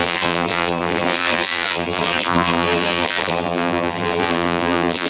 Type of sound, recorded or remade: remade